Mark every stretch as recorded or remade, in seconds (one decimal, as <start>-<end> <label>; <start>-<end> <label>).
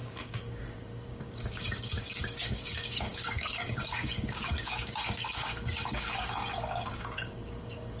0.0-8.0 remade